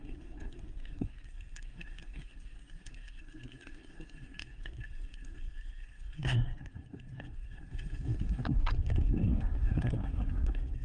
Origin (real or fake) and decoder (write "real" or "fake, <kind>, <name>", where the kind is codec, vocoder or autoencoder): fake, codec, SNAC